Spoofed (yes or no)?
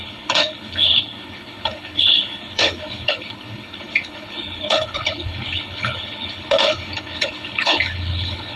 yes